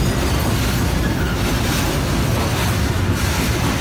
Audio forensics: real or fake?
real